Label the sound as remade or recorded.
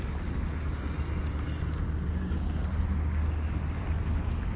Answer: recorded